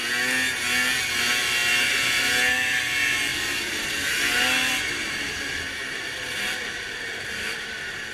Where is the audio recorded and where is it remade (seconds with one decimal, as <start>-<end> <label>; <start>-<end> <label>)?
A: 0.0-3.3 recorded; 3.3-8.1 remade